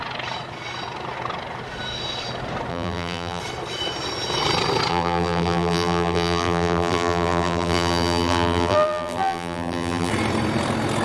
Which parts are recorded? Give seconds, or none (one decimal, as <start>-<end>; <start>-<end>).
0.0-2.7; 3.4-4.9; 10.1-11.0